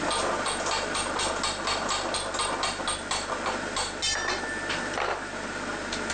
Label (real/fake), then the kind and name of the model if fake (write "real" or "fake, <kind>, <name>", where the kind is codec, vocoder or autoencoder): real